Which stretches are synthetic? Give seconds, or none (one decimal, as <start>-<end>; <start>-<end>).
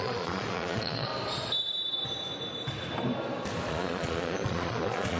0.0-1.1; 3.7-5.2